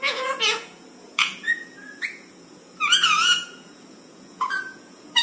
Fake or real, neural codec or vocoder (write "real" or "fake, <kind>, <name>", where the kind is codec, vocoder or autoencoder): fake, vocoder, Vocos